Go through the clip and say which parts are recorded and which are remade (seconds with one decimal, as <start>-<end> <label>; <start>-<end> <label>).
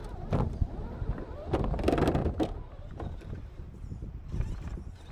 0.0-0.7 remade; 0.7-2.2 recorded; 2.2-4.1 remade; 4.1-5.1 recorded